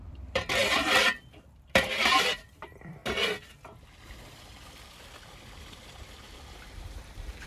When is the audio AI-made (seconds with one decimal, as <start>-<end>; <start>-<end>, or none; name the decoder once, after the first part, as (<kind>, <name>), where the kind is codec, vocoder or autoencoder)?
0.0-3.0 (vocoder, BigVGAN v2); 4.9-7.5